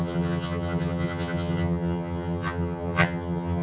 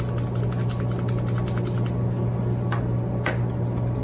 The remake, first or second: first